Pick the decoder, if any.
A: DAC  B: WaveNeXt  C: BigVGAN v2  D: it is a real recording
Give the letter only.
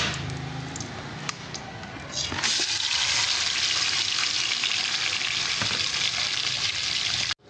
D